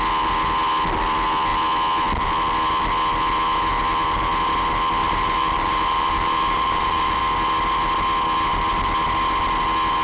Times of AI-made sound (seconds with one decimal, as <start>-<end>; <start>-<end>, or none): 5.0-7.2